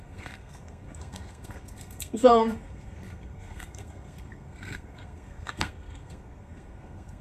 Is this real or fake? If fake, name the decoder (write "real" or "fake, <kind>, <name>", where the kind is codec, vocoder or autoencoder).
fake, codec, SNAC